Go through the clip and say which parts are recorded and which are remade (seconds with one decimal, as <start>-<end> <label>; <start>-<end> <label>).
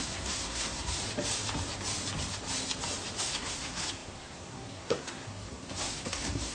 0.0-1.0 remade; 1.0-3.2 recorded; 3.2-6.5 remade